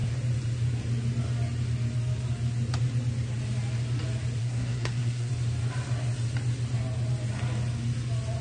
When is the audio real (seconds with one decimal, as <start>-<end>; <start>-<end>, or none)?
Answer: 0.0-4.4; 5.3-8.4